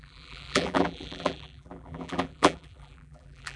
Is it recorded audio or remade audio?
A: remade